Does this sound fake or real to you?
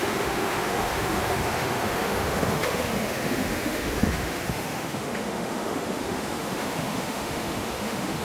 fake